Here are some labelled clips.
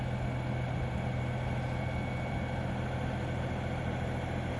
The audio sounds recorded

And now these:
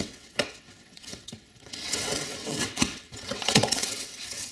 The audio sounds remade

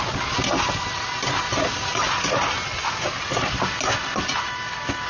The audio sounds recorded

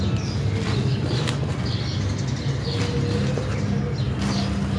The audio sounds recorded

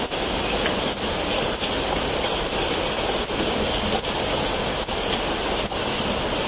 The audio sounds recorded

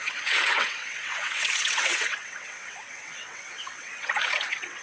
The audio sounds remade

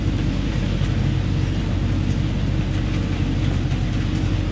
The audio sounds recorded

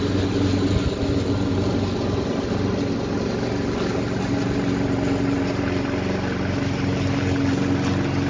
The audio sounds recorded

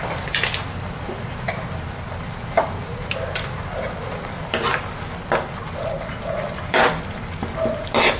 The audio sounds recorded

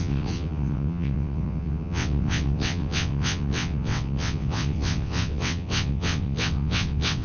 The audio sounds remade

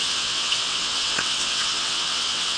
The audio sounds remade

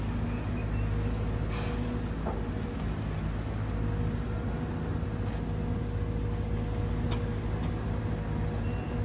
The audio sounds recorded